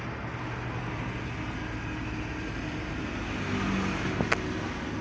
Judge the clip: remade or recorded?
recorded